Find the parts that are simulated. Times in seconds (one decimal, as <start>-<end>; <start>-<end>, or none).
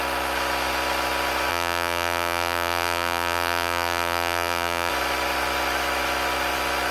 1.5-4.9